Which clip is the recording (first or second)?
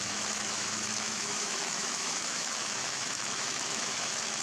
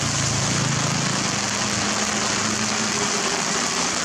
second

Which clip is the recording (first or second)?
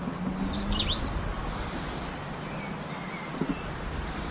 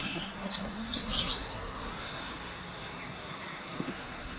first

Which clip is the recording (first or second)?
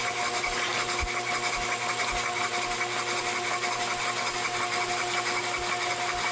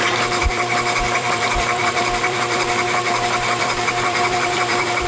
first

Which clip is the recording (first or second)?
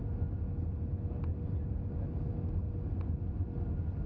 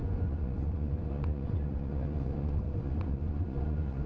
first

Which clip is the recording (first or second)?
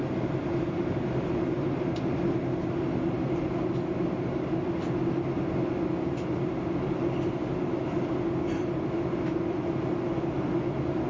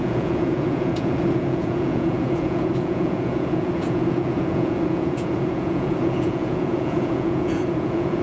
first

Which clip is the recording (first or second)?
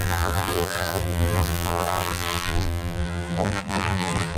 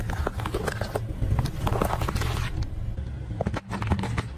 second